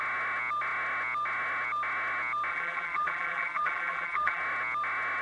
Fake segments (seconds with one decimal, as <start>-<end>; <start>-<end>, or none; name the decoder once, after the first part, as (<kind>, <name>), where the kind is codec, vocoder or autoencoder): 2.5-4.4 (vocoder, BigVGAN v2)